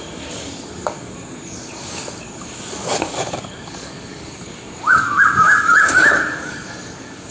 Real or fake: fake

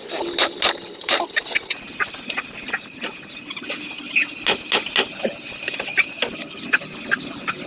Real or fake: real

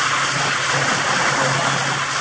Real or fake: real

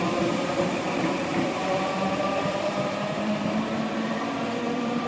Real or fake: fake